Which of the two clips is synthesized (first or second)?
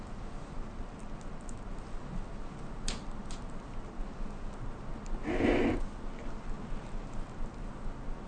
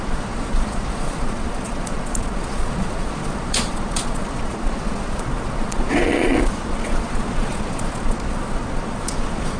second